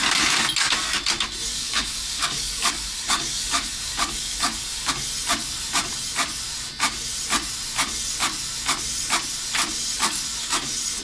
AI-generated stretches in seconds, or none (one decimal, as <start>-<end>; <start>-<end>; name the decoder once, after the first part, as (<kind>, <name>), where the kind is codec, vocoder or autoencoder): 1.5-4.9 (codec, DAC)